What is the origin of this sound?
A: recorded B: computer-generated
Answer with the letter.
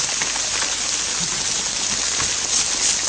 A